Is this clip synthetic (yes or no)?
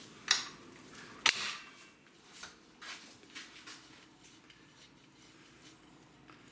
no